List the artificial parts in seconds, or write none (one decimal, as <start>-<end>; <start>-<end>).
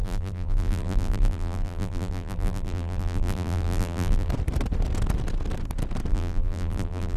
0.0-4.3; 6.1-7.2